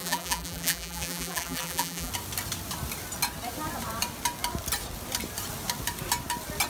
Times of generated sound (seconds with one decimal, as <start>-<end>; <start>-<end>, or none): 0.0-2.1